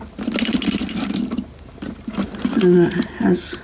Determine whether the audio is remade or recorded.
recorded